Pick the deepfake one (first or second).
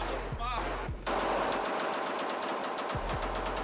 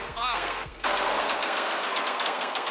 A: second